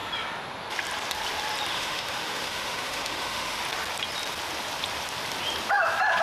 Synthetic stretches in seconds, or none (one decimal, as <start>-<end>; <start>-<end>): 1.7-3.6